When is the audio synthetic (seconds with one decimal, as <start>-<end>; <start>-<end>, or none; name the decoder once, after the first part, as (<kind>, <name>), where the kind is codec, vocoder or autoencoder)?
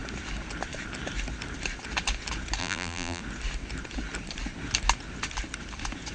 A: 2.6-3.2 (vocoder, BigVGAN v2)